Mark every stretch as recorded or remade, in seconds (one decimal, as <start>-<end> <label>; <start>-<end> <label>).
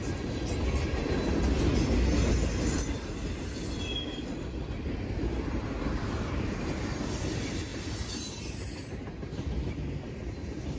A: 0.0-10.8 recorded